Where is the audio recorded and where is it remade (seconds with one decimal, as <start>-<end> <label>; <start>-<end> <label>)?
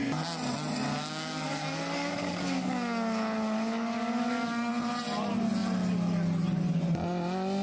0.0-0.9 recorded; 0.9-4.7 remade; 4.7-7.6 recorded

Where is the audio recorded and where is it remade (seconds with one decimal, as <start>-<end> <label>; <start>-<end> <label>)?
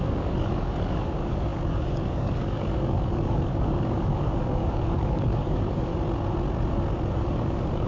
0.0-5.9 remade; 5.9-7.2 recorded; 7.2-7.9 remade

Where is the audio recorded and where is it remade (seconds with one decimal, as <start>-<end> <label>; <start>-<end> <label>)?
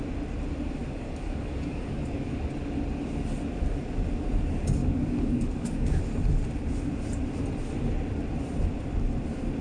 0.0-0.8 recorded; 0.8-2.4 remade; 2.4-4.8 recorded; 4.8-6.0 remade; 6.0-9.6 recorded